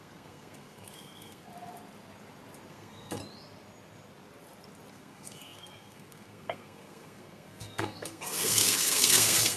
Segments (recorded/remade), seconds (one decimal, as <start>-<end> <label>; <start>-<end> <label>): 0.0-1.5 remade; 1.5-2.7 recorded; 2.7-3.2 remade; 3.2-4.9 recorded; 4.9-9.6 remade